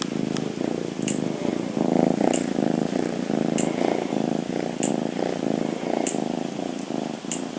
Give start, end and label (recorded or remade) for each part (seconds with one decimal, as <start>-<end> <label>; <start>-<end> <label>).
0.0-7.6 recorded